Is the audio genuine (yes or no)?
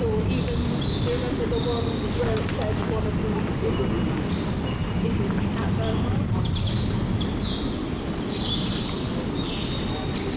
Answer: yes